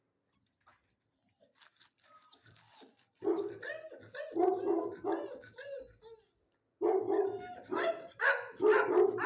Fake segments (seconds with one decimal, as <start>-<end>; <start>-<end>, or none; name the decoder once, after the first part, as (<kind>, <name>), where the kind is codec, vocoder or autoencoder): 0.7-4.2 (vocoder, BigVGAN v2)